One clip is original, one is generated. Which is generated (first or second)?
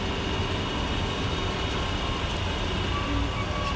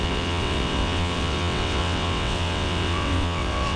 second